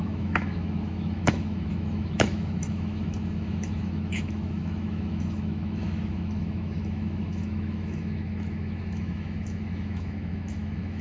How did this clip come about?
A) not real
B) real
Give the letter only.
A